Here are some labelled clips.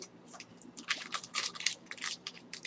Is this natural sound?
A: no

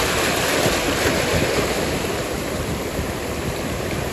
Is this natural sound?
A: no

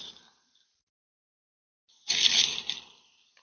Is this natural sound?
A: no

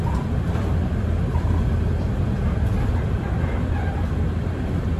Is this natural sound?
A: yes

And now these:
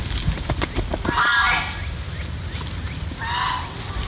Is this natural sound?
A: yes